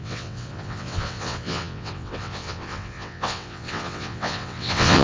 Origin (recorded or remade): remade